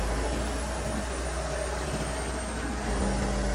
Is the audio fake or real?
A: real